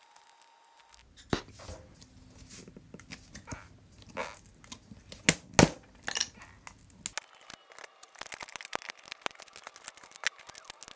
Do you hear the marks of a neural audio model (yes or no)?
no